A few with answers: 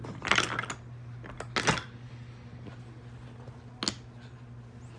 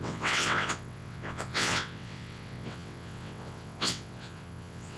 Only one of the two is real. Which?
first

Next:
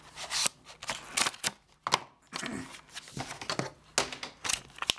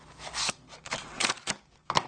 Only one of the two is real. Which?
first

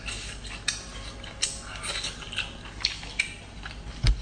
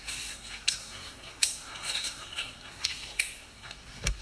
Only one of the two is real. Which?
first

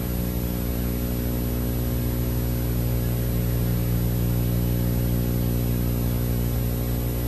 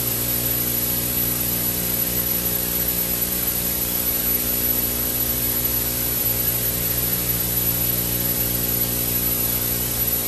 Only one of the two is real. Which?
first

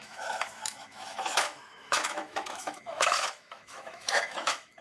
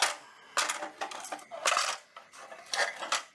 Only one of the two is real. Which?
second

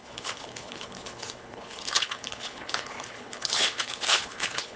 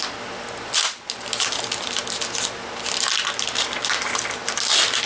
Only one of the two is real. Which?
second